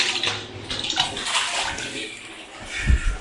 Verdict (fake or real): real